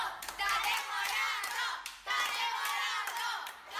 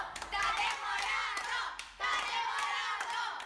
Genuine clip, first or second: first